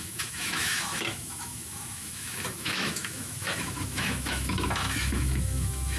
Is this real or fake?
fake